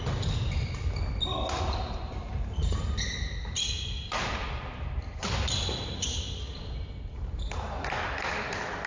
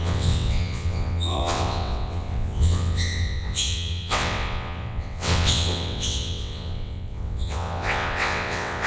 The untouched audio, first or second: first